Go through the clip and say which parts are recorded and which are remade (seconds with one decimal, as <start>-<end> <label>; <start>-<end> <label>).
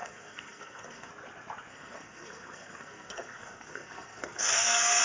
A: 0.0-1.1 remade; 1.1-1.7 recorded; 1.7-5.0 remade